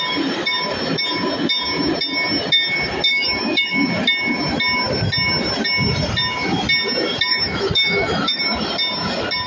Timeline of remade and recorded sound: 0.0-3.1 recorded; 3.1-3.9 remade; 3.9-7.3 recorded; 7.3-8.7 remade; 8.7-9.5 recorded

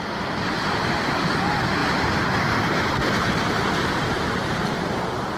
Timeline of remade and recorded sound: 0.0-1.8 recorded; 1.8-5.0 remade; 5.0-5.4 recorded

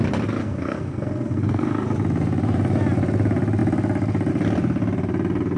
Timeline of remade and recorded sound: 0.0-0.4 recorded; 0.4-1.7 remade; 1.7-5.6 recorded

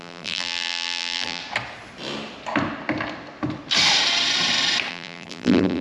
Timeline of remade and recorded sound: 0.0-1.4 remade; 1.4-4.9 recorded; 4.9-5.8 remade

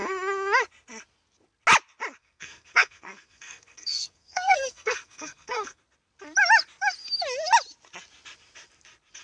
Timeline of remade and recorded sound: 0.0-2.2 recorded; 2.2-5.8 remade; 5.8-9.2 recorded

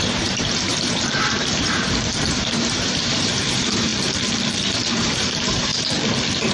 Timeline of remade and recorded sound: 0.0-3.9 remade; 3.9-4.8 recorded; 4.8-5.7 remade; 5.7-6.5 recorded